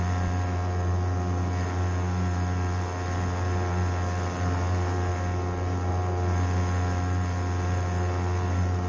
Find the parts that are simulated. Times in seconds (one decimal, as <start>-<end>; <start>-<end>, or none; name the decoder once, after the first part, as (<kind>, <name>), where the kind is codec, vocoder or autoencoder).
none